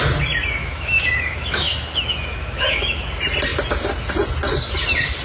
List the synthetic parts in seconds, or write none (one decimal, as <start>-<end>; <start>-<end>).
0.6-3.1